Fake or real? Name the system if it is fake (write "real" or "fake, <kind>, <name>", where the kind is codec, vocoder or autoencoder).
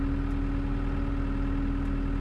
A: real